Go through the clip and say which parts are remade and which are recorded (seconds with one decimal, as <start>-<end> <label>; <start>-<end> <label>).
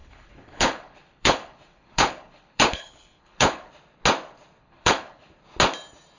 0.0-3.7 remade; 3.7-4.6 recorded; 4.6-5.3 remade; 5.3-6.2 recorded